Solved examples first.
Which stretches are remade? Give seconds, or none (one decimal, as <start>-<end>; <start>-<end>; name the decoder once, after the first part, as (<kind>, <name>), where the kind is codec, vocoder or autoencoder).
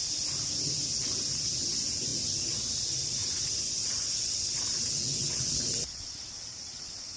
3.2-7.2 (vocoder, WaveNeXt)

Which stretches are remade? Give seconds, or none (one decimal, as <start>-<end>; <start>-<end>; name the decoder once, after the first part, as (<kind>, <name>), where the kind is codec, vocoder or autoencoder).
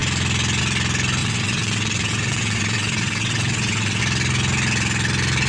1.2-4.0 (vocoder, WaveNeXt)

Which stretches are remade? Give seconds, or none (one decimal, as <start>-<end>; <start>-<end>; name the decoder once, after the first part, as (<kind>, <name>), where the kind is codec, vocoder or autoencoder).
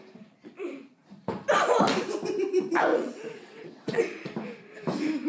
2.9-4.0 (vocoder, WaveNeXt)